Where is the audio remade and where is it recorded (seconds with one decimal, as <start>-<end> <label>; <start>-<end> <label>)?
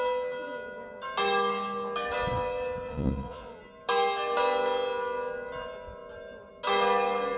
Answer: 0.0-2.9 recorded; 2.9-3.6 remade; 3.6-7.4 recorded